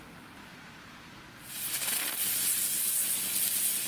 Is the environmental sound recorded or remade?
recorded